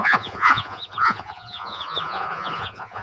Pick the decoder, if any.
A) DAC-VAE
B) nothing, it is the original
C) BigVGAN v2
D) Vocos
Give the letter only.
D